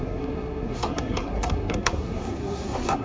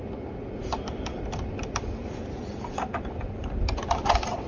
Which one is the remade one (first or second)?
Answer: first